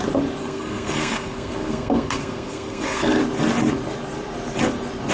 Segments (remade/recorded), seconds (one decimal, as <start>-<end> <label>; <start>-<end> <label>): 0.0-0.4 recorded; 0.4-3.1 remade; 3.1-5.1 recorded